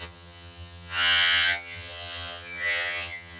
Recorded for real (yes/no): no